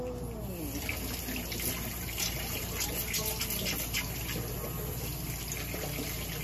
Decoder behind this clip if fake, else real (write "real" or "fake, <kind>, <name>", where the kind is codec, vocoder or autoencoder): real